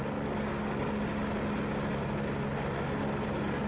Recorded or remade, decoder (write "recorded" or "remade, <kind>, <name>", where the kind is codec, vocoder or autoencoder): recorded